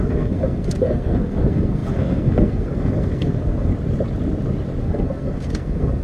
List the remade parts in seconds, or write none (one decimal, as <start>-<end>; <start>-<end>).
0.0-3.7; 4.8-6.0